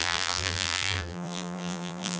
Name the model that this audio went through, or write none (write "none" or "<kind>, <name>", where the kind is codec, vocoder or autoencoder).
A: vocoder, BigVGAN v2